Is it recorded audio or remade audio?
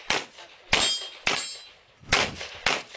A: recorded